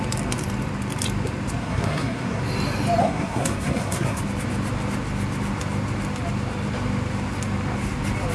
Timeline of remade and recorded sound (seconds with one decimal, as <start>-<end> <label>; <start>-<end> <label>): 0.0-1.6 recorded; 1.6-2.4 remade; 2.4-3.0 recorded; 3.0-4.2 remade; 4.2-8.3 recorded